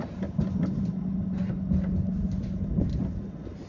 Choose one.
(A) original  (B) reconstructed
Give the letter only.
A